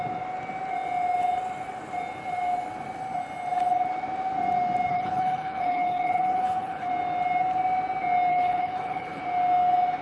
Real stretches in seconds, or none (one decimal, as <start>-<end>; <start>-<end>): 0.0-4.9; 6.9-8.3; 9.2-10.0